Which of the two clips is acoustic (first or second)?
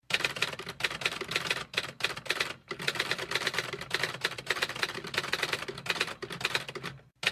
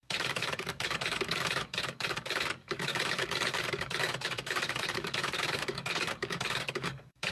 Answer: first